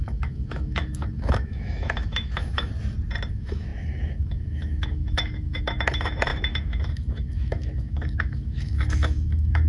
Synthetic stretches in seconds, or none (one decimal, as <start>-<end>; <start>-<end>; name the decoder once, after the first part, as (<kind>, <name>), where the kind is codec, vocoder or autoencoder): 0.0-2.7 (autoencoder, DAC-VAE); 3.3-9.7